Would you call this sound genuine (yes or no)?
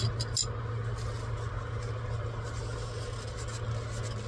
yes